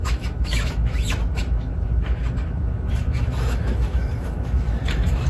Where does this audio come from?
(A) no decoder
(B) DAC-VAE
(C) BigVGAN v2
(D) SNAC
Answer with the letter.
B